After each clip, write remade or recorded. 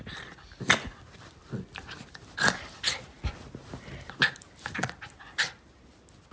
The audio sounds recorded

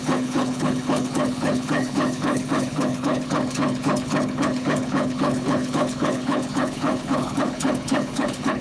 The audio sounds remade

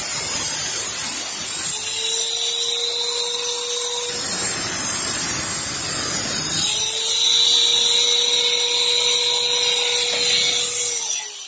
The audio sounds recorded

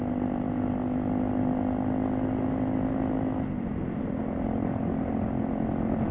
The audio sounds recorded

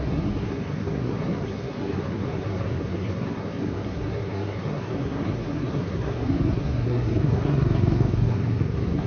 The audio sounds remade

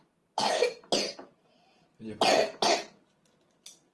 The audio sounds recorded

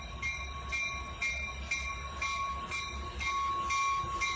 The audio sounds recorded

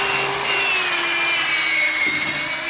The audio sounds recorded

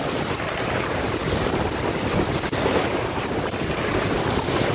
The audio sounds recorded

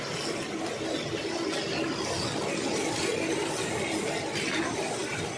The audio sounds recorded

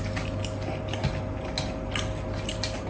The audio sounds recorded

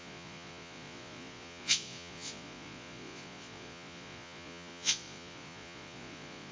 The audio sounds remade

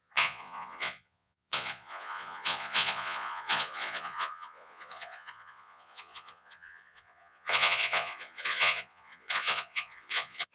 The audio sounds remade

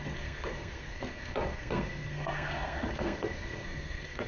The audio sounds remade